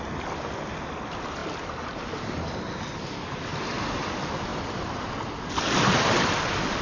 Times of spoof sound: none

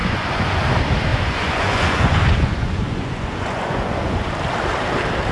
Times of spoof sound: 0.0-0.6 (vocoder, Vocos); 1.1-4.3

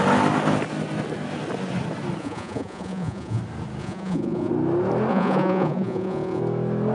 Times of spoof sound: 2.2-3.4 (vocoder, Vocos); 3.8-4.5; 5.1-6.4

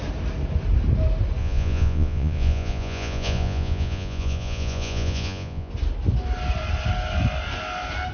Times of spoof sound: 1.4-5.7 (vocoder, Vocos)